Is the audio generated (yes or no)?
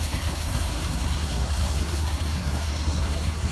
yes